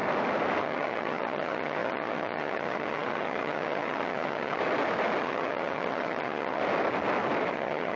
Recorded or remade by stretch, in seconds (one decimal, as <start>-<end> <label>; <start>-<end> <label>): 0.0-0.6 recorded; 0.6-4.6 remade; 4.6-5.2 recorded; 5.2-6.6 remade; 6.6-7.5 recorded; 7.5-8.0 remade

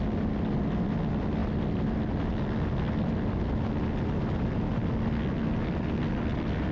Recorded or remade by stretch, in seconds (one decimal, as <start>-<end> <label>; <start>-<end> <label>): 0.0-6.7 recorded

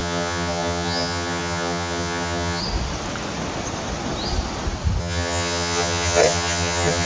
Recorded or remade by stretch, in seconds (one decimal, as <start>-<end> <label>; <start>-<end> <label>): 0.0-2.6 remade; 2.6-5.0 recorded; 5.0-7.0 remade

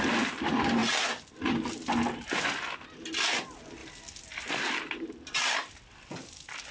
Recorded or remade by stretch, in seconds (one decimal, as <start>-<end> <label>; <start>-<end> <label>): 0.0-6.7 recorded